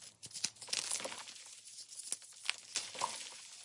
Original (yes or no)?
yes